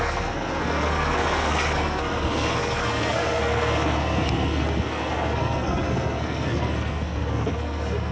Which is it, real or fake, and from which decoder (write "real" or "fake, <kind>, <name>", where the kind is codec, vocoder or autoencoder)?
fake, codec, SNAC